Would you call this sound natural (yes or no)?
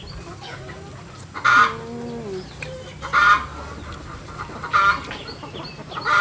yes